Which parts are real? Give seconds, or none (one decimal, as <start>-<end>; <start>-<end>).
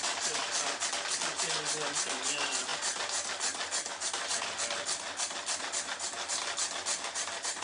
0.0-7.6